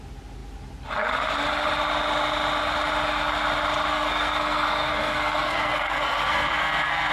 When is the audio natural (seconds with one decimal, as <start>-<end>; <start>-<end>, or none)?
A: 0.0-3.9